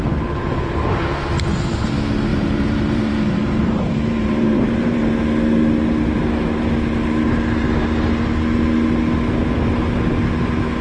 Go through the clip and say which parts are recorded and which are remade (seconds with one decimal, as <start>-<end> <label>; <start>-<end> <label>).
0.0-2.3 recorded; 2.3-5.0 remade; 5.0-10.8 recorded